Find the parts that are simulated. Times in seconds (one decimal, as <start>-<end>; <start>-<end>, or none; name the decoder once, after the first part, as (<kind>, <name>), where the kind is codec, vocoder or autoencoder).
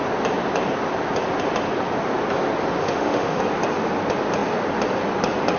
2.8-3.4 (autoencoder, DAC-VAE)